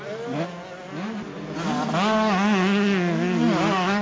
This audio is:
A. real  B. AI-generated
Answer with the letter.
A